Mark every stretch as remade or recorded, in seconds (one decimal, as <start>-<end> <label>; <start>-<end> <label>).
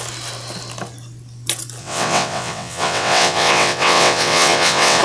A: 0.0-1.8 recorded; 1.8-5.0 remade